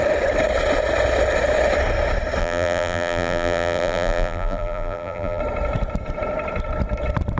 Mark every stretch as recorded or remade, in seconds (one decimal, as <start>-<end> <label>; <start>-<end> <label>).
0.0-2.4 recorded; 2.4-5.4 remade; 5.4-7.4 recorded